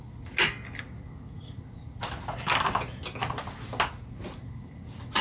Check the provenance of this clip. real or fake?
real